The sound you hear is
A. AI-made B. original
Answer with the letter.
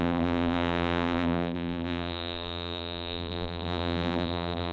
A